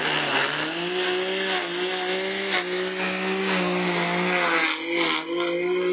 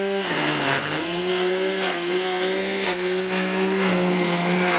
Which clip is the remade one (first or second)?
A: second